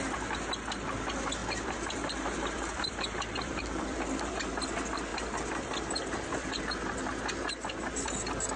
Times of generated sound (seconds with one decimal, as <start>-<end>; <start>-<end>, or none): 1.4-4.3; 5.1-6.6